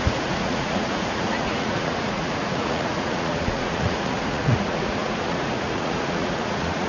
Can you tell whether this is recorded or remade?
remade